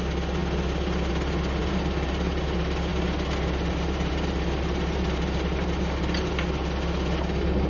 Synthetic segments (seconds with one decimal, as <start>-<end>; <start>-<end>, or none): 1.6-2.3; 2.9-6.3

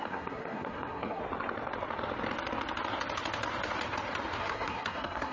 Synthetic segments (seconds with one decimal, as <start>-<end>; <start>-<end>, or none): 0.0-1.2; 4.4-5.3

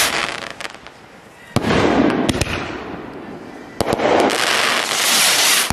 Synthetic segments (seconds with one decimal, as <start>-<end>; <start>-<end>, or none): none

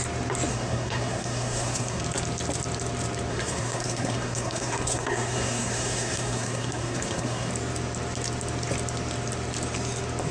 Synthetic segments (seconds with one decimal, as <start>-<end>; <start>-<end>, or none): 0.5-2.0; 3.3-7.5

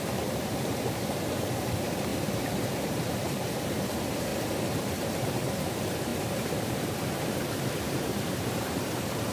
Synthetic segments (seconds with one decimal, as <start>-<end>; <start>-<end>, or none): 0.0-4.3; 5.2-9.3